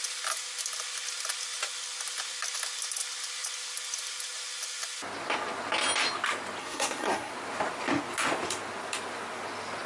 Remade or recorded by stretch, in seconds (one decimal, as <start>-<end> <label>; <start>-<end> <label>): 0.0-6.6 recorded; 6.6-7.3 remade; 7.3-9.9 recorded